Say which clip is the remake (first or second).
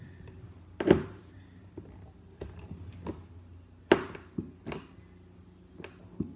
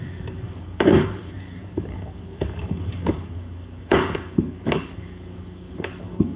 second